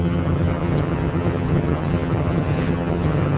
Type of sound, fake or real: fake